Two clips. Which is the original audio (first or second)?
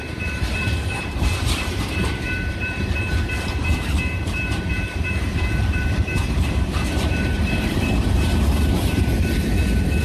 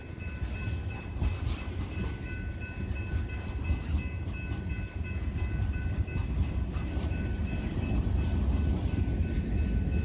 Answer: second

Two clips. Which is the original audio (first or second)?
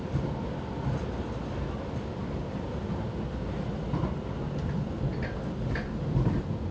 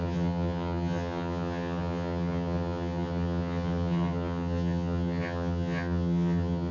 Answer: first